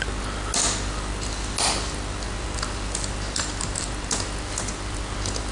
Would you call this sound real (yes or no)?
yes